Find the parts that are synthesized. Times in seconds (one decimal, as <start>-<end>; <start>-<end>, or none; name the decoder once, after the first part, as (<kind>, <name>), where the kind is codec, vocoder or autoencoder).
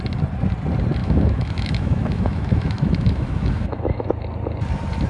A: 1.0-4.1 (autoencoder, DAC-VAE)